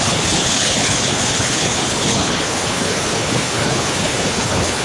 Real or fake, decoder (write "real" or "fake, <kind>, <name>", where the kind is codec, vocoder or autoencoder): fake, codec, HILCodec